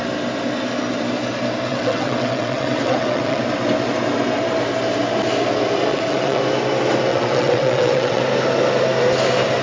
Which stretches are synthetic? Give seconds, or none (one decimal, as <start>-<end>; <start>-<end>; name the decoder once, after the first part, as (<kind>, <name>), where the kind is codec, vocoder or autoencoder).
1.7-3.4 (vocoder, WaveNeXt); 5.9-6.4; 7.1-8.2